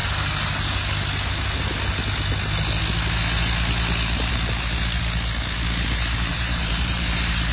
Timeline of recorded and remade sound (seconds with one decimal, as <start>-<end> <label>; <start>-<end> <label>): 0.0-6.3 recorded; 6.3-7.5 remade